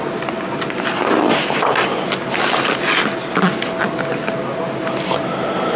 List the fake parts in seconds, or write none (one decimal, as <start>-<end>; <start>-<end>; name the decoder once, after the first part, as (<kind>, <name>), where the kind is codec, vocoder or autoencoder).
none